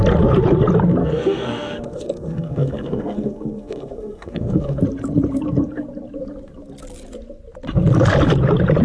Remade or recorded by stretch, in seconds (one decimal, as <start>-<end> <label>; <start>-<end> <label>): 0.0-1.0 recorded; 1.0-4.8 remade; 4.8-8.8 recorded